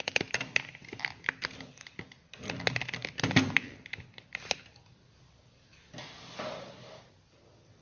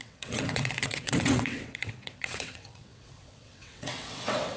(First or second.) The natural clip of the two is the first